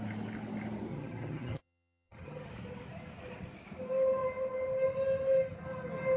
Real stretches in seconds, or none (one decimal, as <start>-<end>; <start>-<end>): 0.0-0.9; 2.5-6.2